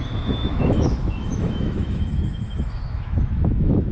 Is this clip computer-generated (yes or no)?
yes